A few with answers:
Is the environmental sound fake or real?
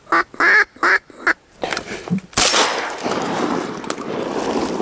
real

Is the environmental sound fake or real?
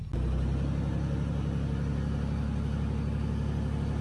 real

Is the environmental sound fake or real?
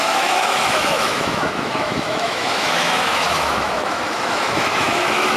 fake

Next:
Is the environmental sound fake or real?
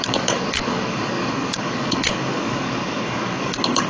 fake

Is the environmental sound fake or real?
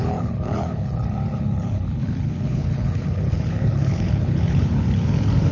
fake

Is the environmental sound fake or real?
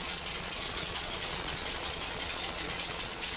fake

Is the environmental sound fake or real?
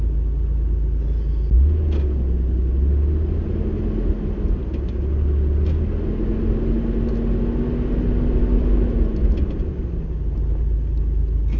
real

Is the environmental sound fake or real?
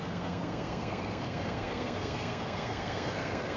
fake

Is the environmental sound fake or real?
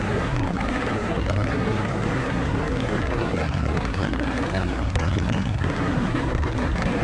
fake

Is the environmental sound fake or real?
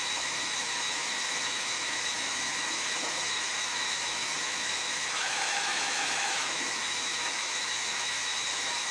fake